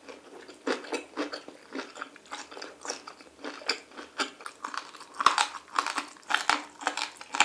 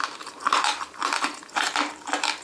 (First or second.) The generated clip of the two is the second